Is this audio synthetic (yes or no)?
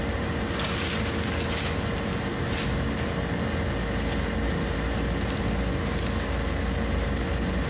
no